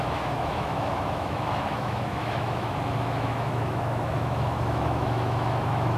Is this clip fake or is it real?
fake